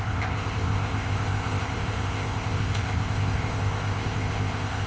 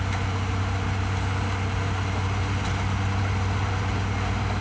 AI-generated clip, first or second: first